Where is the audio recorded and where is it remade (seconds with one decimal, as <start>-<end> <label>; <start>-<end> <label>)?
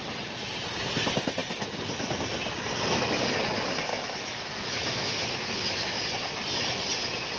0.0-3.9 recorded; 3.9-6.0 remade; 6.0-7.4 recorded